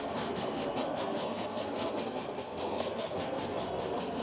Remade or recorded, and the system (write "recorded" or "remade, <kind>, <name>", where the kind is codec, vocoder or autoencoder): remade, codec, SNAC